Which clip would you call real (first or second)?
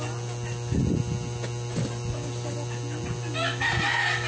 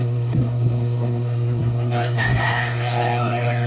first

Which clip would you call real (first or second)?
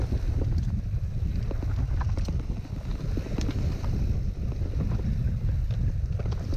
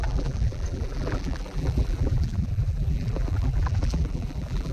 first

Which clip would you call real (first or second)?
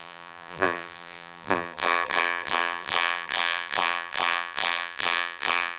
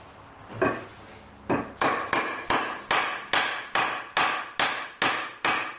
second